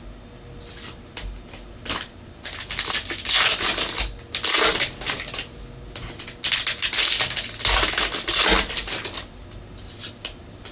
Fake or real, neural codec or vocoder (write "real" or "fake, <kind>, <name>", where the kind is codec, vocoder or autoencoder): real